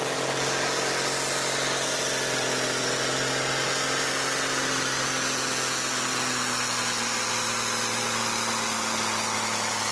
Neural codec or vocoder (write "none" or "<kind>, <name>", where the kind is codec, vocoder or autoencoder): none